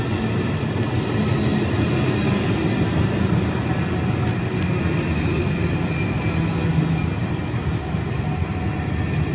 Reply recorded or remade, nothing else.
recorded